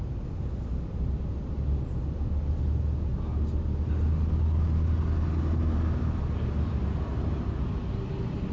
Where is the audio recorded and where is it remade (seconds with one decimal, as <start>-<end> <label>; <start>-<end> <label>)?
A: 0.0-8.5 recorded